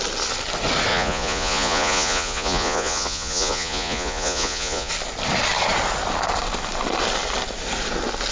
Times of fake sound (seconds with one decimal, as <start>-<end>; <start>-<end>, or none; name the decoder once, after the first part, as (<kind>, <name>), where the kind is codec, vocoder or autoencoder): 0.9-4.9 (vocoder, Vocos)

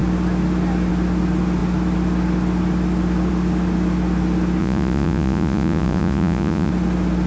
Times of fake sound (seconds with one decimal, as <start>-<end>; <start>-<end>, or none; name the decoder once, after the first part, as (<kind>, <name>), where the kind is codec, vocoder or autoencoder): 4.6-6.7 (vocoder, Vocos)

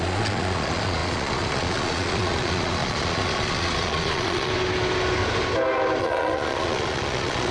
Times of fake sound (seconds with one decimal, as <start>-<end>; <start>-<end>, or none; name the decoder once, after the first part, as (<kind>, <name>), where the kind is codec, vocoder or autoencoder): 0.0-4.5 (vocoder, Vocos); 6.0-7.5

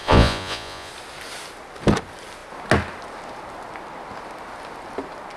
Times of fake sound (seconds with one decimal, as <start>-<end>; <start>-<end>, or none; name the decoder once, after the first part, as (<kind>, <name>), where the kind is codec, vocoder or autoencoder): 0.0-0.9 (vocoder, Vocos)

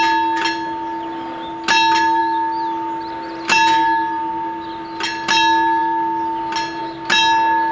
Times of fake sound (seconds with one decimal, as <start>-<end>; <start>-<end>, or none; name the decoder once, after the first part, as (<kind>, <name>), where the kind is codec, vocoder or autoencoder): none

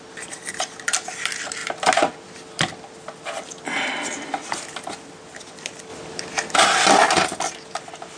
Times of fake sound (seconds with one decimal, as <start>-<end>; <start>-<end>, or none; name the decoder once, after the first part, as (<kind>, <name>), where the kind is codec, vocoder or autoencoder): none

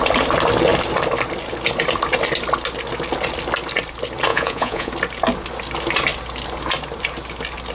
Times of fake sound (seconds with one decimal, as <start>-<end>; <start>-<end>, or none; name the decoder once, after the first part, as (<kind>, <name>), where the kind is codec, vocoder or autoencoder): 4.3-4.9 (vocoder, Vocos)

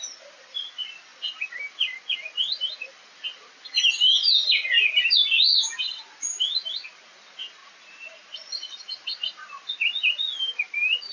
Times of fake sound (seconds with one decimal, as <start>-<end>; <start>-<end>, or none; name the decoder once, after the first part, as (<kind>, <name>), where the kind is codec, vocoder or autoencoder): 7.6-8.8 (vocoder, Vocos)